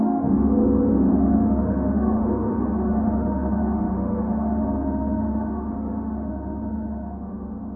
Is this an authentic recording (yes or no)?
no